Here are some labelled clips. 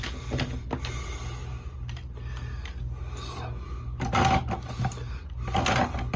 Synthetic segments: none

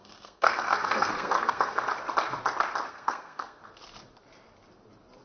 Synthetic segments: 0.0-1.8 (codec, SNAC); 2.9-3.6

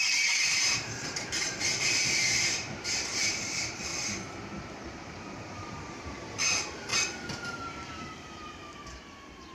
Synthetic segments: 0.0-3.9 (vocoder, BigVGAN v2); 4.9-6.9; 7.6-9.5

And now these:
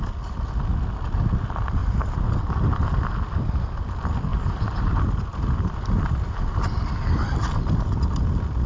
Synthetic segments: 1.8-2.3 (vocoder, BigVGAN v2); 4.3-5.0

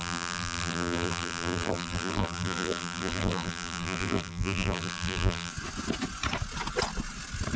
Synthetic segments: 0.0-5.5 (vocoder, BigVGAN v2)